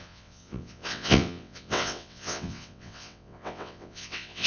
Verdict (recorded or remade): remade